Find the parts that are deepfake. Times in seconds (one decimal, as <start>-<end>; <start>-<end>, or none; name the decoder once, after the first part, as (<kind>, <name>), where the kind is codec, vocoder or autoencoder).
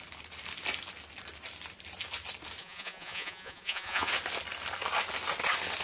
2.6-4.1 (vocoder, Vocos)